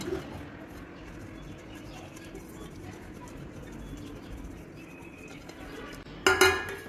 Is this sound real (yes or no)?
yes